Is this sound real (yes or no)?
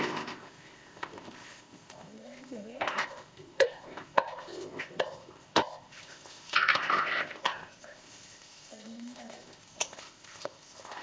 no